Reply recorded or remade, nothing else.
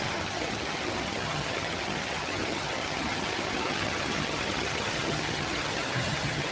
remade